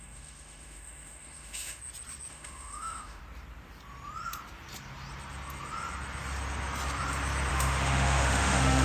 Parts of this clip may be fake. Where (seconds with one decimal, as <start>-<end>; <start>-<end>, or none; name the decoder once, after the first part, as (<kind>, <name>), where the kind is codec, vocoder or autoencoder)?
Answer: 0.0-1.8 (autoencoder, DAC-VAE); 2.3-3.2; 7.5-8.8